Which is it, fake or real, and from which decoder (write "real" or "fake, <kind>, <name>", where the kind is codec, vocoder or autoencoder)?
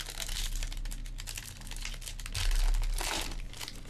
real